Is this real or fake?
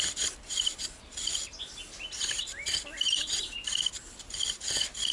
real